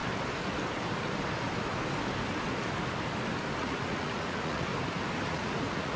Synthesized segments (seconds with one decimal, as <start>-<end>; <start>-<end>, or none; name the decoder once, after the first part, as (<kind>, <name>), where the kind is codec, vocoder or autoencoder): 3.6-4.7 (vocoder, Vocos); 5.3-6.0

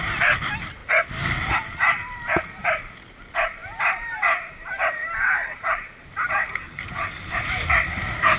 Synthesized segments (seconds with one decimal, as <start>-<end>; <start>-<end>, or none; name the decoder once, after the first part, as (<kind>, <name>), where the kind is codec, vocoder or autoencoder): 3.6-8.4 (vocoder, BigVGAN v2)

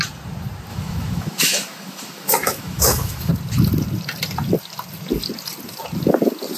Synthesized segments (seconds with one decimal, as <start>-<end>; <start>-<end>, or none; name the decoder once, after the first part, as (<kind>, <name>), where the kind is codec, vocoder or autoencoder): 0.7-3.3 (autoencoder, DAC-VAE)

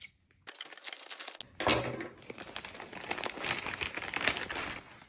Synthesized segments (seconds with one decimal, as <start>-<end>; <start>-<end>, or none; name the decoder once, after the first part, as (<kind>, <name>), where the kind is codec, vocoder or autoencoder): none

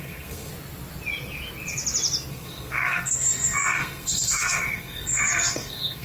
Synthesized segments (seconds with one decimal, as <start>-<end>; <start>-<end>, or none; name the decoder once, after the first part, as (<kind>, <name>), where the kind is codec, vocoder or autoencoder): 0.0-0.5 (codec, SNAC); 2.3-6.0